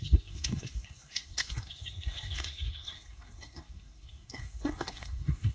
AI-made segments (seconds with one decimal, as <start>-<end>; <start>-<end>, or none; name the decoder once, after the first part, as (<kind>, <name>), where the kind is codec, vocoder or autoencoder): 0.0-5.5 (codec, SNAC)